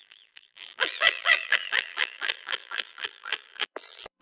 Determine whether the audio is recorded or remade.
remade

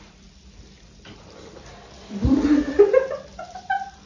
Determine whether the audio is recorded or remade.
recorded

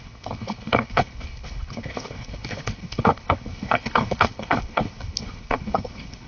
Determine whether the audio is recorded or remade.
remade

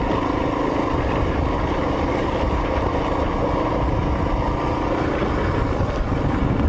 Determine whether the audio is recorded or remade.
recorded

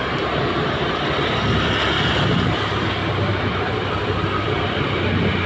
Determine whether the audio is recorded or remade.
remade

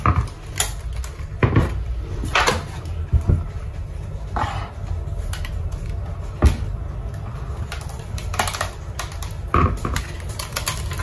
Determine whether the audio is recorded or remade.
recorded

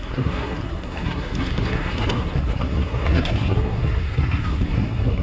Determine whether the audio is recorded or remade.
remade